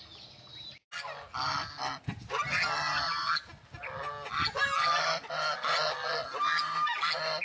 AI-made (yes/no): no